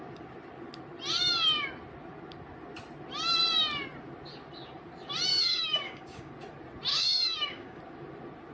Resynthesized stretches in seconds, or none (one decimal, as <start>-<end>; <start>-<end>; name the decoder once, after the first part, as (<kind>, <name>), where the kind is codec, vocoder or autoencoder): 5.3-6.3 (codec, DAC); 6.9-7.8